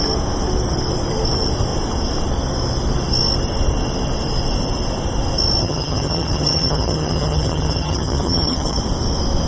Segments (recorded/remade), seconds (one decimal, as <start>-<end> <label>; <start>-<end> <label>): 0.0-5.6 recorded; 5.6-8.8 remade; 8.8-9.5 recorded